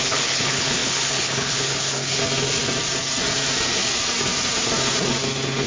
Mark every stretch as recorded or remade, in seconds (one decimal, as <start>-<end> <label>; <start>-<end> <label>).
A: 0.0-2.2 remade; 2.2-5.7 recorded